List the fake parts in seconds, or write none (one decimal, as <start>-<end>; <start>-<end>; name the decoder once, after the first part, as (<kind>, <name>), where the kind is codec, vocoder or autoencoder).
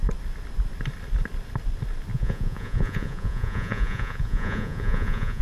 2.1-5.4 (vocoder, Vocos)